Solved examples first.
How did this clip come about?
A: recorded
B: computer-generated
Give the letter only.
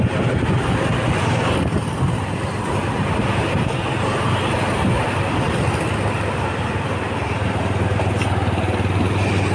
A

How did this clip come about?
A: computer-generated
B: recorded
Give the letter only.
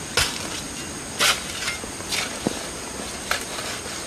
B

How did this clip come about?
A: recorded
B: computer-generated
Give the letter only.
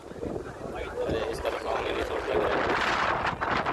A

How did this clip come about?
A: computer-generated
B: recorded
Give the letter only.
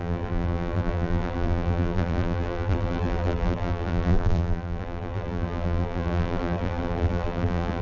A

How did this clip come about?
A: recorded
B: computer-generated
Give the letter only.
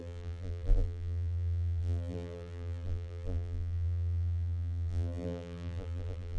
B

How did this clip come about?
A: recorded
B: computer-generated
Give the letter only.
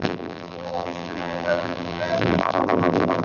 B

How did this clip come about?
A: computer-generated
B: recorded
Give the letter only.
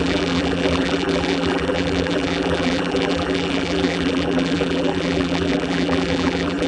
A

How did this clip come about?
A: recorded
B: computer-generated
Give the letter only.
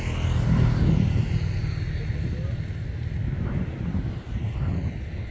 A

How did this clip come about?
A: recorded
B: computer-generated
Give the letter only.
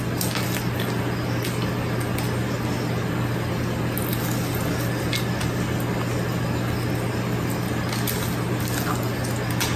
A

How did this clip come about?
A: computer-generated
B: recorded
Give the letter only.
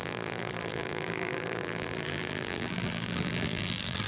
A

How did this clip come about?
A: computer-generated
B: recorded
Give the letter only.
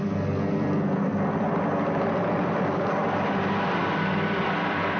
A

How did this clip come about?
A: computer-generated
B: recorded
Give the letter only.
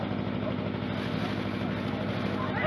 B